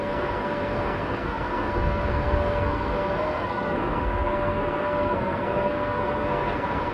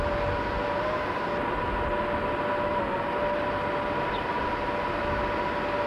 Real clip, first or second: second